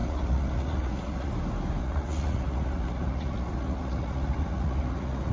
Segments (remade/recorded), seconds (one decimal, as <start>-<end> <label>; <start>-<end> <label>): 0.0-1.3 remade; 1.3-1.8 recorded; 1.8-5.3 remade